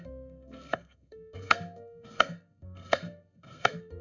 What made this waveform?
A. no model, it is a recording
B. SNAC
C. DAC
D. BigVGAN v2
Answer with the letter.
B